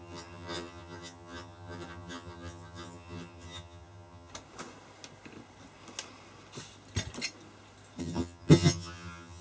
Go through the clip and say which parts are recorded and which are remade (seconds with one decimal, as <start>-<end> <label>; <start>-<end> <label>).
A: 0.0-4.3 remade; 4.3-8.0 recorded; 8.0-9.4 remade